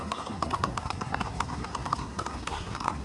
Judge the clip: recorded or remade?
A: remade